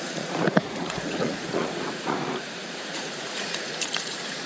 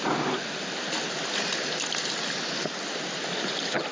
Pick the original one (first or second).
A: second